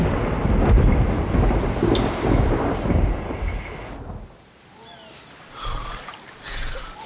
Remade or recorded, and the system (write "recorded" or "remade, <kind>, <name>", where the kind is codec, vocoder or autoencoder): recorded